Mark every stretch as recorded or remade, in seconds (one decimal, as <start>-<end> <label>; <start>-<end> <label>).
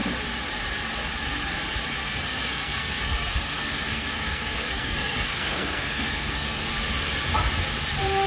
0.0-2.0 recorded; 2.0-6.7 remade; 6.7-8.3 recorded